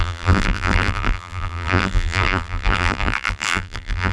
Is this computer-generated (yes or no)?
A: yes